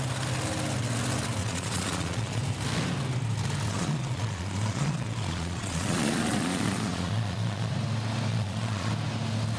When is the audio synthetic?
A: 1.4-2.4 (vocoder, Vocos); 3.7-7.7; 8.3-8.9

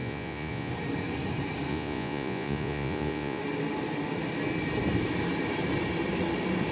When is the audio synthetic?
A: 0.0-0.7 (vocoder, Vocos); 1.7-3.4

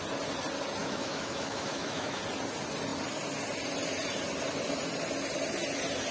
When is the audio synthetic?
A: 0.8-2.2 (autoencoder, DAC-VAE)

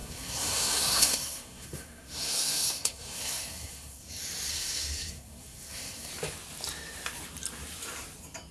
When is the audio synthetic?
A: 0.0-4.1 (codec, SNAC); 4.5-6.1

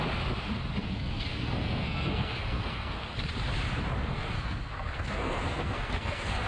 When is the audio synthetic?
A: 0.8-3.0 (codec, SNAC); 4.0-6.5

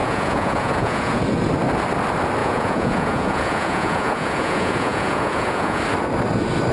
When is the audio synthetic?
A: 0.0-1.2 (vocoder, Vocos); 2.4-5.8

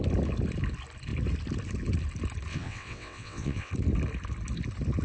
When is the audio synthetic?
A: 2.5-3.7 (vocoder, WaveNeXt)

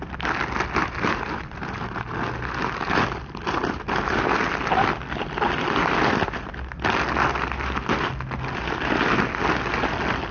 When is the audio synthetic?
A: 0.8-2.2 (vocoder, BigVGAN v2)